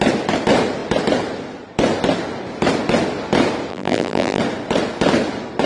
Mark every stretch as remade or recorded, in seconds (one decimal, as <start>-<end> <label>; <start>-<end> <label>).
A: 0.0-3.7 recorded; 3.7-4.4 remade; 4.4-5.7 recorded